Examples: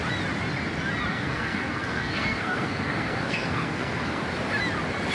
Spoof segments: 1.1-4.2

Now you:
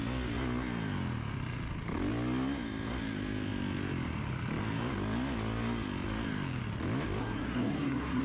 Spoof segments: 7.2-8.2